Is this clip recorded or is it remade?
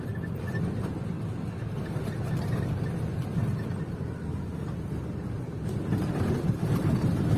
remade